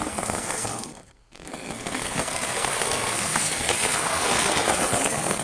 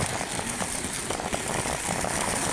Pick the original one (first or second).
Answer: second